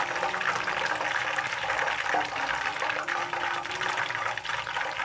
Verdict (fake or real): real